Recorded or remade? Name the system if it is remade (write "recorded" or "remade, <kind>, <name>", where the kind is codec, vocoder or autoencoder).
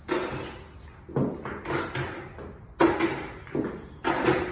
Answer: recorded